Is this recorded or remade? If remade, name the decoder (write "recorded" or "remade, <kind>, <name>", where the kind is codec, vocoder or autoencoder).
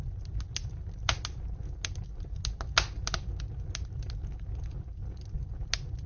recorded